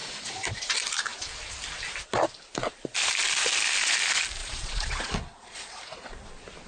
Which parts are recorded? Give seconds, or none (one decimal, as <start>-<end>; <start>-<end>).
0.0-4.4; 5.8-6.7